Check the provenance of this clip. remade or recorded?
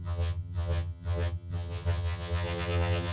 remade